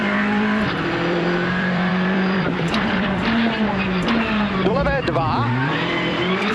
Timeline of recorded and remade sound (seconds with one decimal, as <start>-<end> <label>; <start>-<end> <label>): 0.0-3.2 remade; 3.2-4.7 recorded; 4.7-6.5 remade